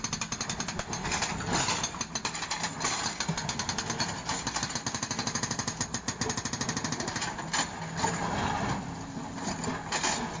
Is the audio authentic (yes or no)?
yes